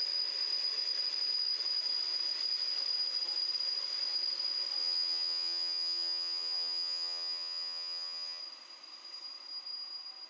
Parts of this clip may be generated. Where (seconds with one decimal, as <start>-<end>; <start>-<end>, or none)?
4.8-8.4